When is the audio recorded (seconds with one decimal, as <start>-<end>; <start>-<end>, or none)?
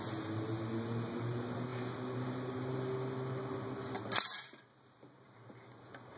0.0-6.2